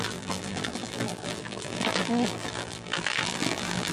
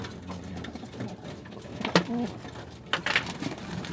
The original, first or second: second